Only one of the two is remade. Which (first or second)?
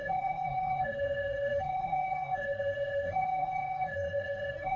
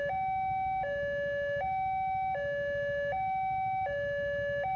first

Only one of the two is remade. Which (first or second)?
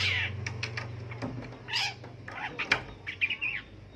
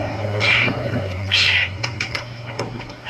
second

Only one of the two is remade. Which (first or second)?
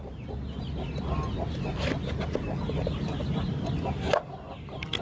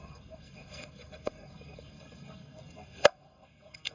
second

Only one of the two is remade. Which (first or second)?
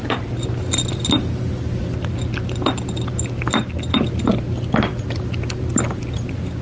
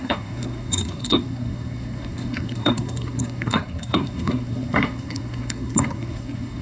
second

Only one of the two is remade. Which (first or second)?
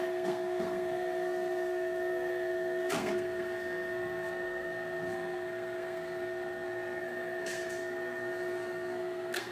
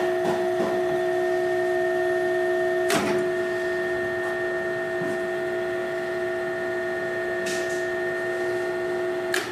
first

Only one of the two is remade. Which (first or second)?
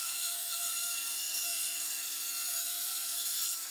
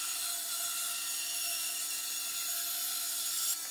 first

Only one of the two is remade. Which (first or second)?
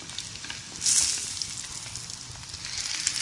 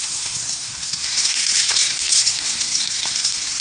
second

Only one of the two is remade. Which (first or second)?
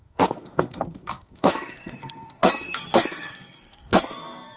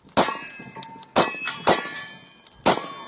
first